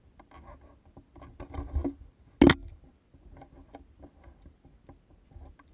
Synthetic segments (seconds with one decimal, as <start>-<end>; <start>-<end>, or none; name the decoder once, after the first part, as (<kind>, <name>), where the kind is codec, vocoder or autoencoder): none